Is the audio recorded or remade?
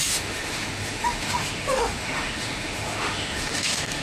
remade